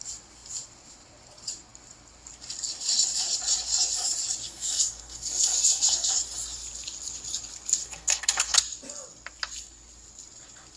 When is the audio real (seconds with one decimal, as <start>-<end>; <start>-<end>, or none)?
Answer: 0.0-4.4; 6.1-7.8; 8.6-10.8